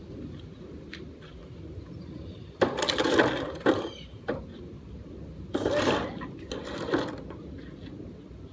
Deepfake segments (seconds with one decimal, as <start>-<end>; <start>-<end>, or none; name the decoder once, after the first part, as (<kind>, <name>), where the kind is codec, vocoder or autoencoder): 1.4-4.4 (vocoder, BigVGAN v2)